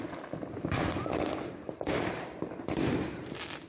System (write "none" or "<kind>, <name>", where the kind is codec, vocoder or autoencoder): none